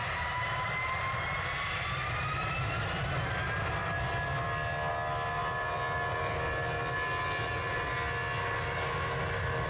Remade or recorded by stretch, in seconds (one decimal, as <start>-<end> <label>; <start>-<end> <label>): 0.0-9.7 recorded